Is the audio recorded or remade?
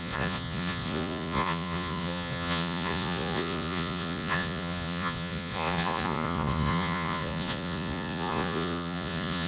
remade